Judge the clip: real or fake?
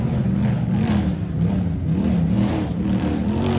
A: real